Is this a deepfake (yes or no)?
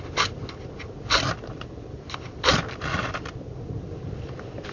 no